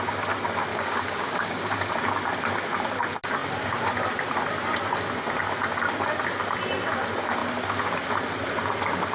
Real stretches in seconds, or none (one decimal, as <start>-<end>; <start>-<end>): 0.0-0.7; 1.9-9.1